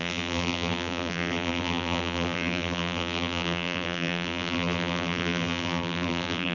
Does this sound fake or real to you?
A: fake